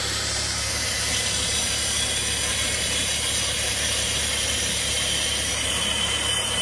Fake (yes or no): yes